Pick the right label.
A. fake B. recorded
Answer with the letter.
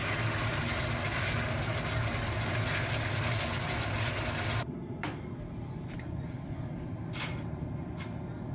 B